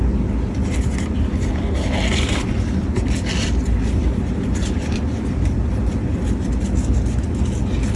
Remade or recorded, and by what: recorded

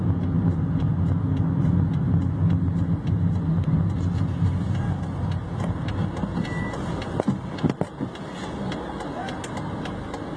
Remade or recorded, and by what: recorded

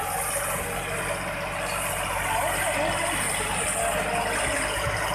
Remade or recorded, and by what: recorded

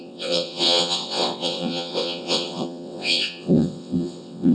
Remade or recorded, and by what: remade, vocoder, WaveNeXt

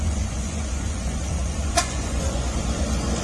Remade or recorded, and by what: remade, vocoder, Vocos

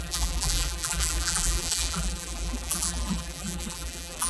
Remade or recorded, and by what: remade, vocoder, BigVGAN v2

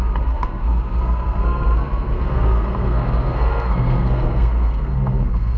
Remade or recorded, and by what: remade, codec, SNAC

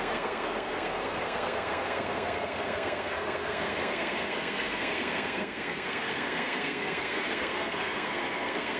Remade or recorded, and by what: remade, codec, SNAC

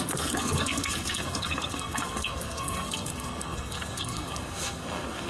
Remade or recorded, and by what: remade, codec, SNAC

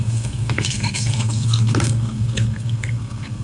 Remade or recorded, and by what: remade, codec, SNAC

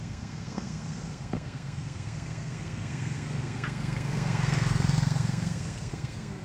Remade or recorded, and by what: remade, codec, SNAC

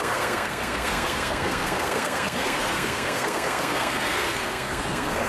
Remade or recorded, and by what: remade, codec, SNAC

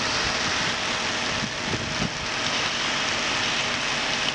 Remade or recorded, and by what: recorded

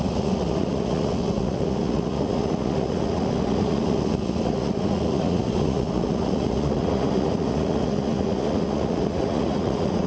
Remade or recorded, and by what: remade, vocoder, Vocos